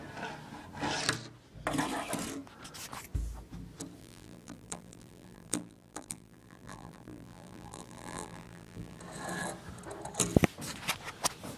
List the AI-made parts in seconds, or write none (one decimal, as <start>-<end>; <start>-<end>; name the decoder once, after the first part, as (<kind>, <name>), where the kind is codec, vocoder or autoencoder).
4.0-9.0 (vocoder, BigVGAN v2)